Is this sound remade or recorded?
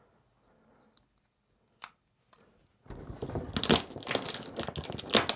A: recorded